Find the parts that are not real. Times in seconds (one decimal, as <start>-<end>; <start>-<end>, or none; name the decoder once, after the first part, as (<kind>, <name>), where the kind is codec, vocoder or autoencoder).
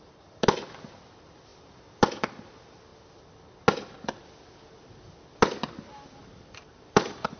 6.2-7.4 (vocoder, BigVGAN v2)